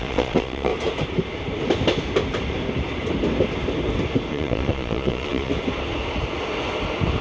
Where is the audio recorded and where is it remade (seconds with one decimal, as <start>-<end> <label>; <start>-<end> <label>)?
0.0-0.7 remade; 0.7-4.3 recorded; 4.3-5.5 remade; 5.5-7.2 recorded